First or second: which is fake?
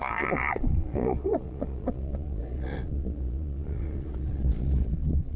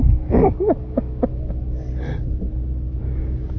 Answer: first